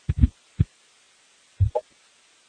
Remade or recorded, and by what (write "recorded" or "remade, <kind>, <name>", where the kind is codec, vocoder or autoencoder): remade, vocoder, BigVGAN v2